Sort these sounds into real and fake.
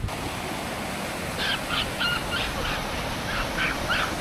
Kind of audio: real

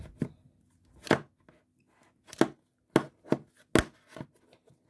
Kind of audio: real